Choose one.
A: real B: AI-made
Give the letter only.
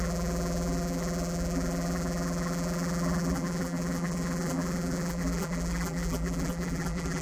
B